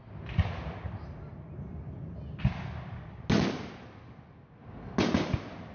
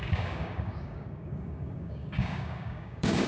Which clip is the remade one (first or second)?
second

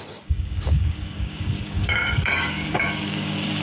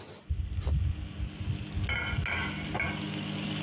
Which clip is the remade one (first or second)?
first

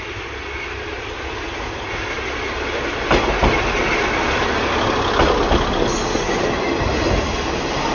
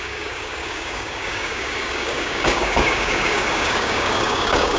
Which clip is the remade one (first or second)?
second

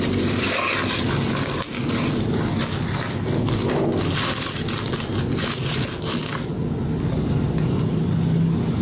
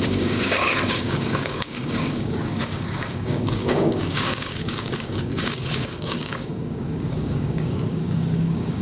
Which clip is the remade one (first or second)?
second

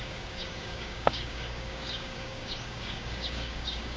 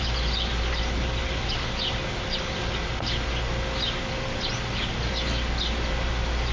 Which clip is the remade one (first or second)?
first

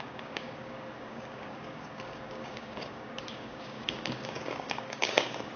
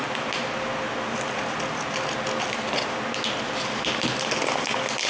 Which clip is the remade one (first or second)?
first